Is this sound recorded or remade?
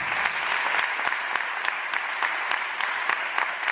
recorded